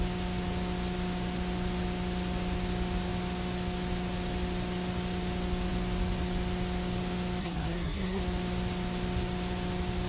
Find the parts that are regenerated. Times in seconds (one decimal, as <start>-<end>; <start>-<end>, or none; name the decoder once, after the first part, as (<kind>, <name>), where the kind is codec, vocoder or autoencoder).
7.4-8.2 (codec, SNAC)